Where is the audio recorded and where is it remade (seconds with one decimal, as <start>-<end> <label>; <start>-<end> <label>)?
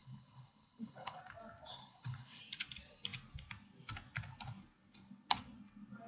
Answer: 0.0-1.2 remade; 1.2-1.7 recorded; 1.7-2.4 remade; 2.4-6.1 recorded